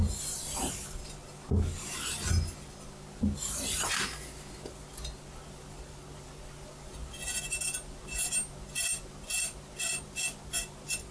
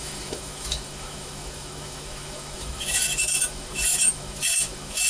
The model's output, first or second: second